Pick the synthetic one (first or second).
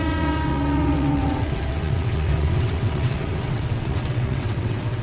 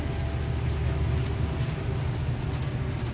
first